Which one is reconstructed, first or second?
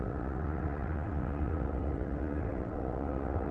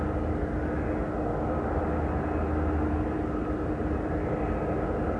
first